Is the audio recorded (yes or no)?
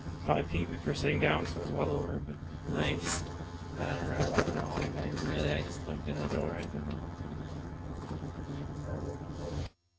no